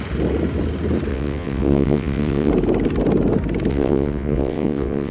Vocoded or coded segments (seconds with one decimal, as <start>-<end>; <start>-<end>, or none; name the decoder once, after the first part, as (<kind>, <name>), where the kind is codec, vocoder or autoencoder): 1.1-2.5 (vocoder, WaveNeXt); 3.7-5.1